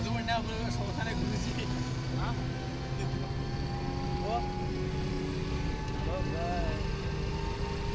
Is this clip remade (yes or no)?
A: no